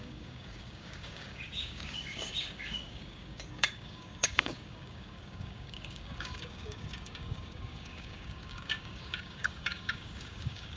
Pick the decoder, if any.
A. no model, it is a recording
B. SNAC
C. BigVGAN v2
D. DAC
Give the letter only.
D